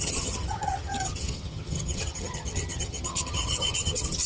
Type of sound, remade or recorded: remade